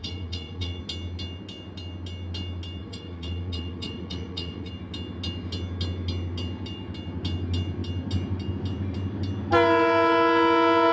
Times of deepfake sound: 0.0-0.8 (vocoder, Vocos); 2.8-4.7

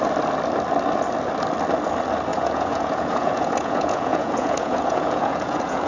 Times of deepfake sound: 2.3-5.9 (vocoder, Vocos)